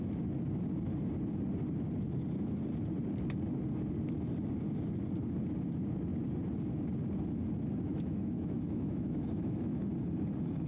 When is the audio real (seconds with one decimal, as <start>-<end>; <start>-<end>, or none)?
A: 0.0-7.9; 9.8-10.7